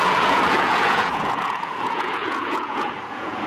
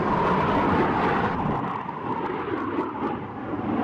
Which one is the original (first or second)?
second